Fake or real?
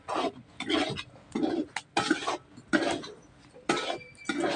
real